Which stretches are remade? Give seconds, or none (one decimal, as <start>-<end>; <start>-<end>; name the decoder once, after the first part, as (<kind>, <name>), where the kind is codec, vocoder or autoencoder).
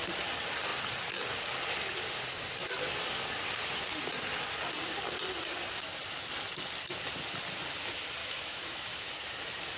8.2-9.1 (autoencoder, DAC-VAE)